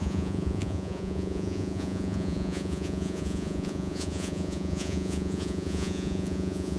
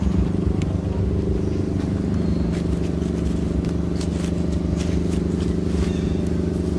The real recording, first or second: second